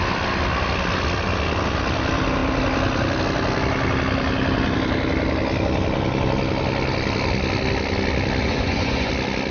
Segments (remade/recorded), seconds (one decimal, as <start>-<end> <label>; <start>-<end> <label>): 0.0-8.4 recorded; 8.4-9.1 remade; 9.1-9.5 recorded